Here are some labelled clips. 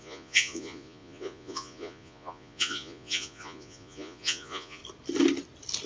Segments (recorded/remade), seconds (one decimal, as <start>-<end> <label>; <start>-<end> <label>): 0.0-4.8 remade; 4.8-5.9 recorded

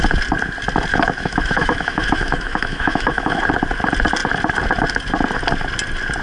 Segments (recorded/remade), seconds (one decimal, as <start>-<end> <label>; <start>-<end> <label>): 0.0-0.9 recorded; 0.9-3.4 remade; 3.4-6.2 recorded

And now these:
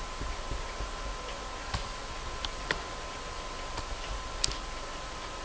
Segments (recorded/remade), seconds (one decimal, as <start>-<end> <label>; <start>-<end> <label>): 0.0-5.4 recorded

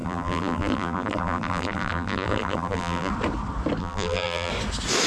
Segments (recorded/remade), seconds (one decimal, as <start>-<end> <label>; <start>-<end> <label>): 0.0-3.1 remade; 3.1-3.8 recorded; 3.8-4.5 remade; 4.5-5.1 recorded

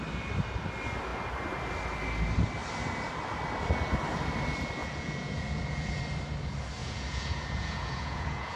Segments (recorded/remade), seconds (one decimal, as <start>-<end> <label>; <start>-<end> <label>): 0.0-4.8 recorded; 4.8-6.0 remade; 6.0-6.8 recorded; 6.8-8.6 remade

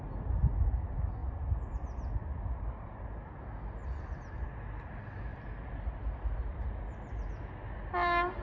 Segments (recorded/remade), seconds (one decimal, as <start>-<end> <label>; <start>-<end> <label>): 0.0-8.4 recorded